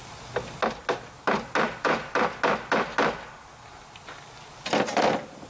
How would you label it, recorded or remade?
recorded